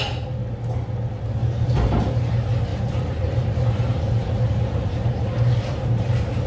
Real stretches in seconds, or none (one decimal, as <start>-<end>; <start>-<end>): 0.0-1.4; 2.3-2.7; 6.1-6.5